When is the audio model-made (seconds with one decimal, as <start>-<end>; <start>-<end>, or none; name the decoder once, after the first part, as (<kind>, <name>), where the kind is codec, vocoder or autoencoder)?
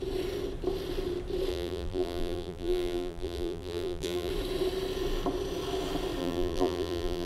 1.5-4.3 (vocoder, BigVGAN v2); 6.2-7.3